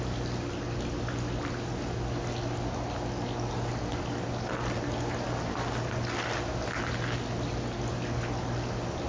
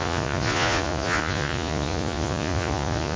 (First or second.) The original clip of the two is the first